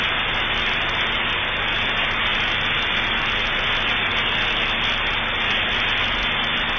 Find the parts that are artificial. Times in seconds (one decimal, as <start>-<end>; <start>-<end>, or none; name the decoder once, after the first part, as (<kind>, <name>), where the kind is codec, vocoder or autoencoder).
none